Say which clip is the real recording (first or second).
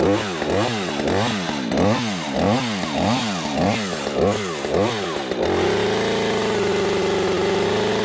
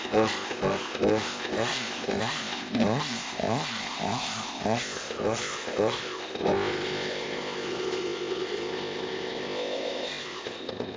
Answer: first